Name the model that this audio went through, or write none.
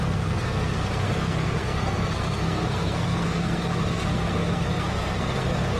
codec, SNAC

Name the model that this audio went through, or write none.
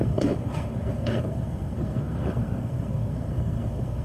codec, SNAC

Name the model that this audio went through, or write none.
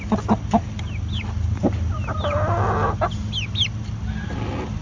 none